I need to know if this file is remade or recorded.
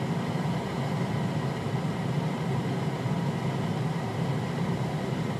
recorded